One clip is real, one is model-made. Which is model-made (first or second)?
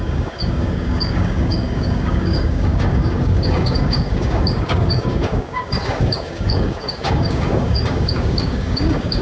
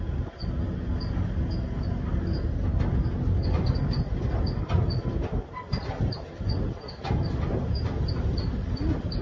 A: first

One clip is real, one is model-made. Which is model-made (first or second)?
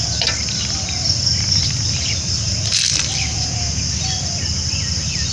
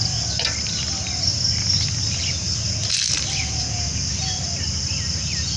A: first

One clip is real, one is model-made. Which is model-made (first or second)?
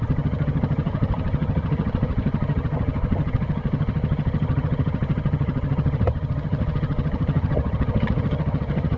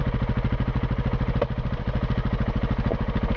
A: first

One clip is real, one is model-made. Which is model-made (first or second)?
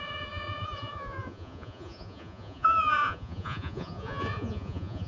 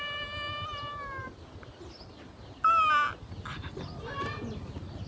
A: first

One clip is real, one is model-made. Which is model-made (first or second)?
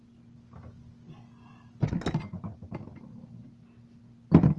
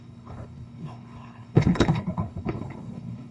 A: second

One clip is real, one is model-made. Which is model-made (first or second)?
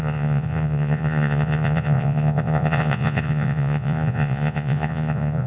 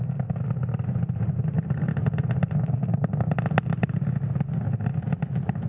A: first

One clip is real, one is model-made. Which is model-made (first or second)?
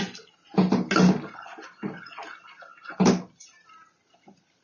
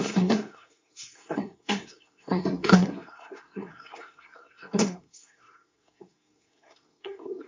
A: second